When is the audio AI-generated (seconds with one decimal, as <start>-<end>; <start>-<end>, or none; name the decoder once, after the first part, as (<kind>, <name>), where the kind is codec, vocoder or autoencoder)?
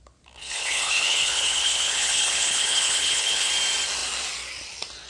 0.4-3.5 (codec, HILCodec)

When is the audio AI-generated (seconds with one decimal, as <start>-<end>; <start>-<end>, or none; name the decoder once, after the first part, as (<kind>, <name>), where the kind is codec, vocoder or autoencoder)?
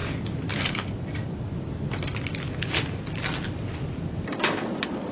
0.0-2.1 (vocoder, BigVGAN v2)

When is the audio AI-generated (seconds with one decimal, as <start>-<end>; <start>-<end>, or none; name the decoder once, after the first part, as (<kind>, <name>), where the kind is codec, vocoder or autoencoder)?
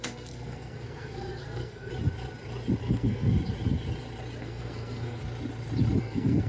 0.0-1.9 (codec, SNAC); 2.8-3.3; 4.4-5.2; 6.0-6.5